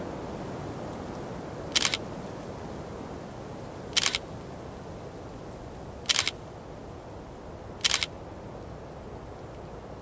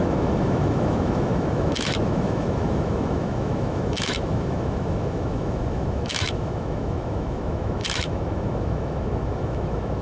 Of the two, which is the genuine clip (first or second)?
first